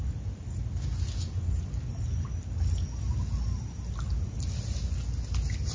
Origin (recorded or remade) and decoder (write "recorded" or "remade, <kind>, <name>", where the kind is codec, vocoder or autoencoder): recorded